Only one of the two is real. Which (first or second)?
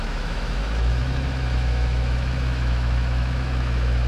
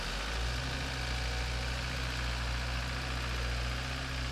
second